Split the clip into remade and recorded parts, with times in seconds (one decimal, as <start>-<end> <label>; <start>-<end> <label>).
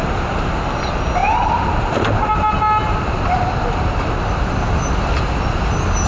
0.0-6.1 recorded